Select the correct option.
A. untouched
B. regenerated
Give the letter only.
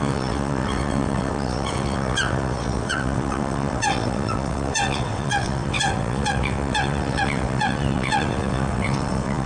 B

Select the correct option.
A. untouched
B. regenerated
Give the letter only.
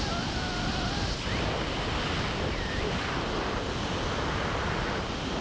A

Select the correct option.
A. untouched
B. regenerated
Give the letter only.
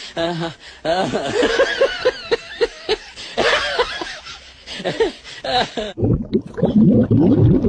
A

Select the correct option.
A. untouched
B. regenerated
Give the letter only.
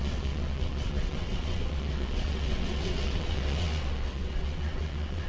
B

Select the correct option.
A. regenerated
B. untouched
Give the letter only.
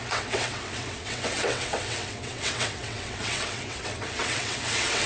A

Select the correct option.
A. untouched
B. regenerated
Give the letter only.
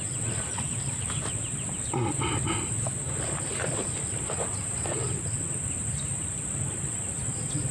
A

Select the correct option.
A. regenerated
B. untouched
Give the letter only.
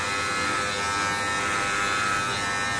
B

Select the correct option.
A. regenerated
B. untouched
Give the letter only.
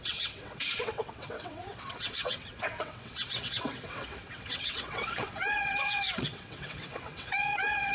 A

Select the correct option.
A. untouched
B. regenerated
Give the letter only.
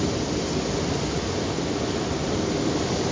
A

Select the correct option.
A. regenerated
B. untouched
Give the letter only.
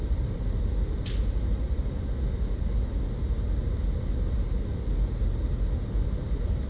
B